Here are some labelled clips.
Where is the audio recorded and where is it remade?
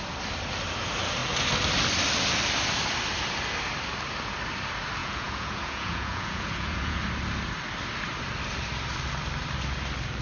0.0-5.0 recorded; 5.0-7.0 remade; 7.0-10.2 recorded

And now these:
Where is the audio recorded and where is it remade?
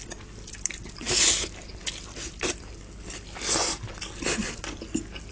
0.0-5.3 recorded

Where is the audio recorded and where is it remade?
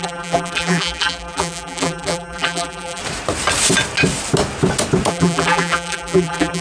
0.0-3.0 remade; 3.0-5.1 recorded; 5.1-6.6 remade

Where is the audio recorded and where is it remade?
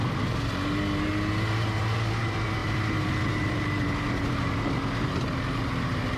0.0-6.2 recorded